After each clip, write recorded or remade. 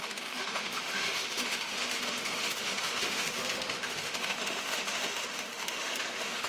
remade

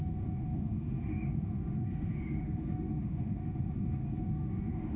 remade